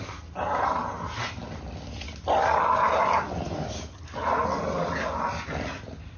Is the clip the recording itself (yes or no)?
yes